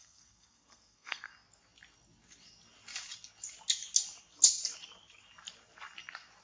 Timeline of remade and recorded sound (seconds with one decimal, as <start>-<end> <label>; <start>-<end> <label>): 0.0-1.3 remade; 1.3-6.4 recorded